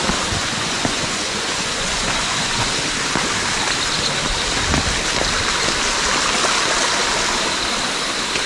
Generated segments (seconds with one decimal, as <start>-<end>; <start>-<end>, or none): 0.4-2.7